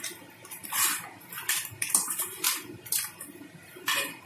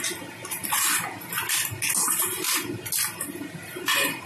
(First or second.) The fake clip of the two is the first